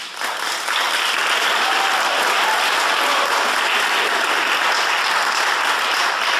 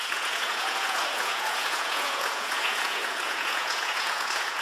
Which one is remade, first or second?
second